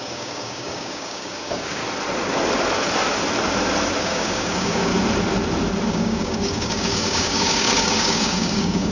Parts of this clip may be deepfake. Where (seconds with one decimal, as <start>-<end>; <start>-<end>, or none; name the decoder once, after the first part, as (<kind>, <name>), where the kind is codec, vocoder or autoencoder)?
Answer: 0.0-1.8 (codec, DAC); 4.0-4.9; 5.9-8.9